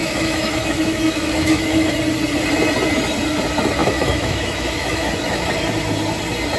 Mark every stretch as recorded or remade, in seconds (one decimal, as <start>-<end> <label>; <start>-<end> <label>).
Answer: 0.0-2.0 remade; 2.0-3.8 recorded; 3.8-5.5 remade; 5.5-6.6 recorded